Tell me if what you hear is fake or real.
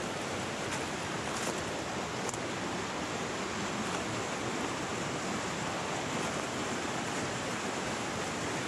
real